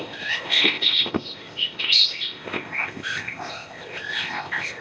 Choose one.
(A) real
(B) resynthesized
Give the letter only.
B